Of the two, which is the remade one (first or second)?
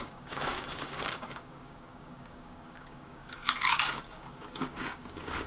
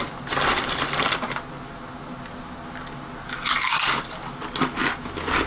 first